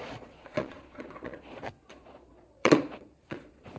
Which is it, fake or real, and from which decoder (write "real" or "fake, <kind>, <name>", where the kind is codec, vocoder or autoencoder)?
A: fake, vocoder, Vocos